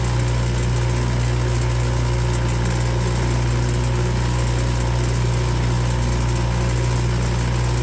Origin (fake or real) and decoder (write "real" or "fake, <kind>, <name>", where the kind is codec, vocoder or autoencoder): real